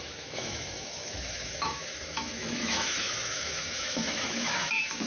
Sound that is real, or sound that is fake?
fake